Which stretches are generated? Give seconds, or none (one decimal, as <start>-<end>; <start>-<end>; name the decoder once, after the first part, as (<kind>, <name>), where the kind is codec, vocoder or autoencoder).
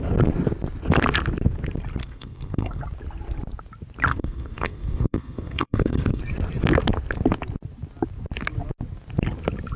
2.0-2.8 (codec, SNAC); 4.1-6.2